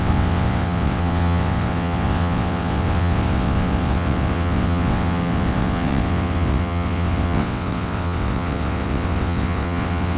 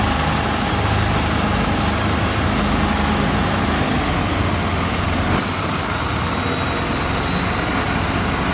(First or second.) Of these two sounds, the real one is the second